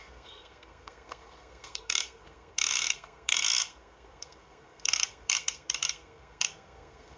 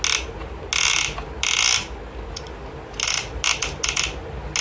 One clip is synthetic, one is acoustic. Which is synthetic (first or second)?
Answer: first